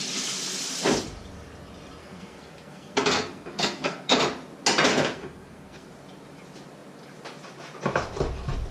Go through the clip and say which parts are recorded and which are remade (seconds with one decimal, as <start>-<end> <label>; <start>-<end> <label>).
0.0-2.0 recorded; 2.0-4.2 remade; 4.2-4.9 recorded; 4.9-5.9 remade; 5.9-8.7 recorded